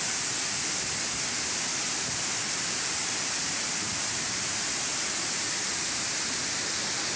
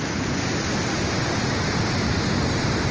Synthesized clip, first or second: first